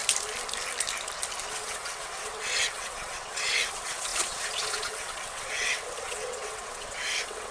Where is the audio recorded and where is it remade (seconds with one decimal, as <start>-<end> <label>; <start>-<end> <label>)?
0.0-1.5 recorded; 1.5-7.5 remade